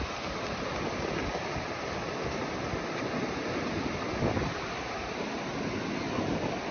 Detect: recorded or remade recorded